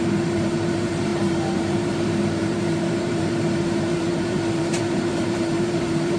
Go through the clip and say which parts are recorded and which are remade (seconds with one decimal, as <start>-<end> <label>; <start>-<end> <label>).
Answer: 0.0-6.2 remade